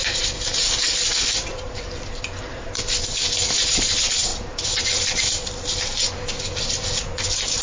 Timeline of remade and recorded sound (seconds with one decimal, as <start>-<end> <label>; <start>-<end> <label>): 0.0-4.3 recorded; 4.3-4.8 remade; 4.8-7.6 recorded